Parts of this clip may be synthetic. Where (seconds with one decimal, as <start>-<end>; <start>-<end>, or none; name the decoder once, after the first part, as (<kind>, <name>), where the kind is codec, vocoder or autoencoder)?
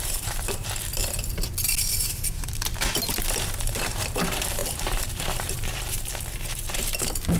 0.0-1.0 (vocoder, BigVGAN v2); 2.1-7.4